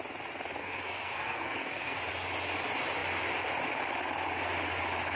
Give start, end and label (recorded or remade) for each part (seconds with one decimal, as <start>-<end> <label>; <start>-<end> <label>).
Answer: 0.0-0.6 recorded; 0.6-2.0 remade; 2.0-5.2 recorded